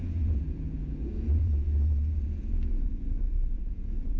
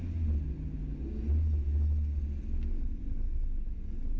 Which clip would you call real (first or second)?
second